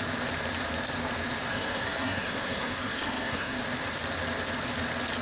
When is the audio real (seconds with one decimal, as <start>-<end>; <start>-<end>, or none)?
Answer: 0.0-1.5; 3.6-5.2